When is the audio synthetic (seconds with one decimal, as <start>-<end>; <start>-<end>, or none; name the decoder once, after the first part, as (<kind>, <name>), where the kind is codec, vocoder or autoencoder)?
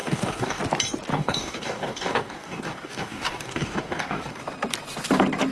0.0-0.6 (codec, DAC); 1.1-4.4